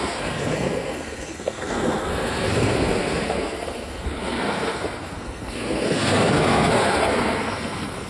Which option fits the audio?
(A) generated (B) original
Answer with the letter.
A